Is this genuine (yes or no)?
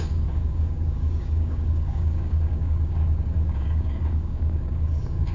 no